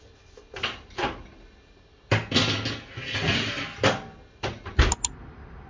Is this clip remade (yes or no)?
no